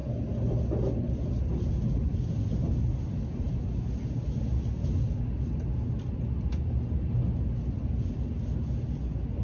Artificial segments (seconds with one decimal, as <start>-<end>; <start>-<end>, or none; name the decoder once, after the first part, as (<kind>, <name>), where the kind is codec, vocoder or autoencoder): none